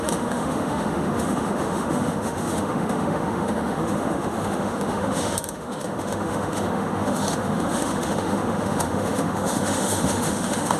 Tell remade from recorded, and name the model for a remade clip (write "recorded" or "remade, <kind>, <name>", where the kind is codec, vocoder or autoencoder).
remade, autoencoder, DAC-VAE